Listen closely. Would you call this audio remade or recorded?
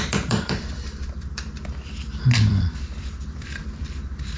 remade